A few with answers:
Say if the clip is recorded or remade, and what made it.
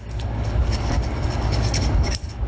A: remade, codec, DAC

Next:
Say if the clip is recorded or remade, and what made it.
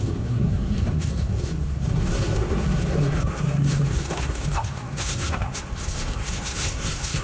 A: remade, codec, SNAC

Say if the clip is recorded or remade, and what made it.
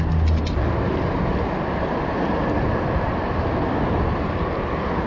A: recorded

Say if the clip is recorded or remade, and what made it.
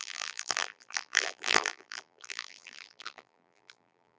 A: remade, vocoder, BigVGAN v2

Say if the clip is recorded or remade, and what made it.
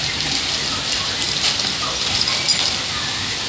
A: recorded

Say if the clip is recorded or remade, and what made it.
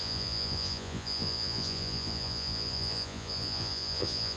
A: remade, vocoder, Vocos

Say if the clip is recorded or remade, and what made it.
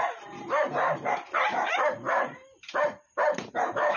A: remade, vocoder, BigVGAN v2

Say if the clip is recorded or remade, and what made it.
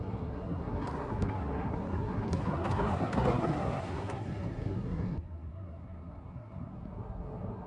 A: remade, codec, SNAC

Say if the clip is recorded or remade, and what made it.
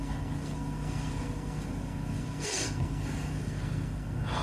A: remade, codec, SNAC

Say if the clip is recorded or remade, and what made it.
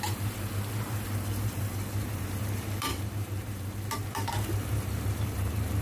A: remade, vocoder, BigVGAN v2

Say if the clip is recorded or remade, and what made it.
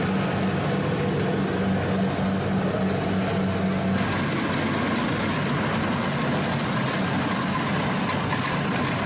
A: recorded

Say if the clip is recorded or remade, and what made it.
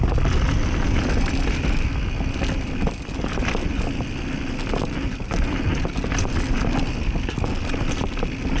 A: recorded